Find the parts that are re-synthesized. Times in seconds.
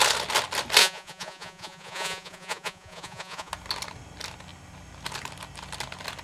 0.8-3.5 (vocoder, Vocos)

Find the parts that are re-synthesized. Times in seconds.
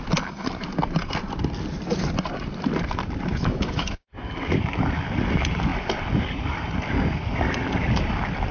3.3-4.1 (autoencoder, DAC-VAE)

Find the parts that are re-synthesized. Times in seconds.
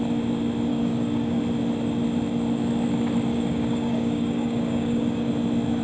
0.7-1.4 (codec, DAC); 3.3-5.3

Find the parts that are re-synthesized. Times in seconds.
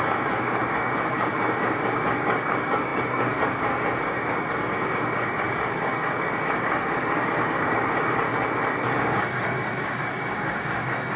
0.0-8.3 (codec, DAC); 9.0-11.2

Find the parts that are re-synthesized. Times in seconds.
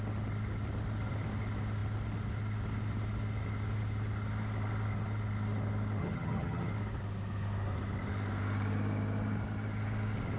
6.0-6.7 (vocoder, HiFi-GAN)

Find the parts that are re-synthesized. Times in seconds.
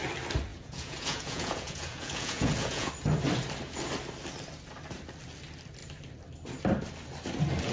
0.5-2.9 (vocoder, Vocos)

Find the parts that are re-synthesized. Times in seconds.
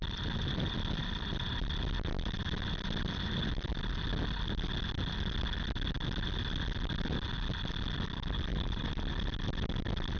8.5-9.0 (vocoder, BigVGAN v2)